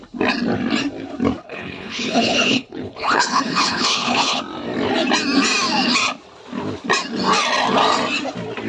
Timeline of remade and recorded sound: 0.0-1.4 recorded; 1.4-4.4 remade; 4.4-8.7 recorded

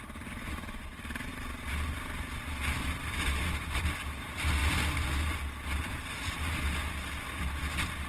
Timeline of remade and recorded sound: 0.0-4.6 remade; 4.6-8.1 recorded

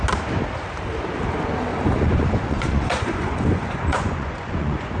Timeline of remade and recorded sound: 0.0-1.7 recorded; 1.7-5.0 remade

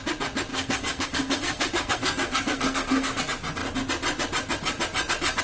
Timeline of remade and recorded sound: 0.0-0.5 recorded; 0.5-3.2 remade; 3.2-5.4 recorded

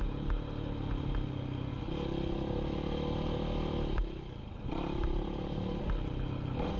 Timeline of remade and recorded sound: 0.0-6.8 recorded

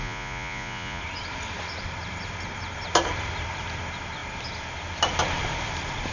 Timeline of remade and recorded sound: 0.0-1.0 remade; 1.0-6.1 recorded